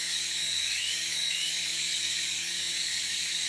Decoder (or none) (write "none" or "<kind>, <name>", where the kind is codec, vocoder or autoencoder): codec, DAC